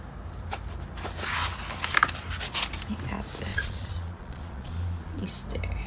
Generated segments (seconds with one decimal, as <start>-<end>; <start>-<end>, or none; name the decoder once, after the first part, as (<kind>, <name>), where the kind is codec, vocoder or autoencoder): 3.5-5.3 (vocoder, Vocos)